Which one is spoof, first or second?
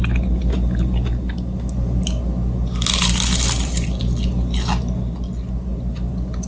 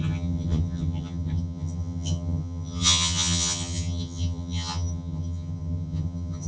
second